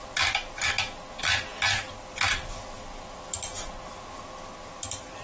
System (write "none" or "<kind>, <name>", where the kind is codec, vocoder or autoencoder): none